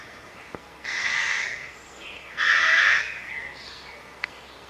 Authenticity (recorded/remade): remade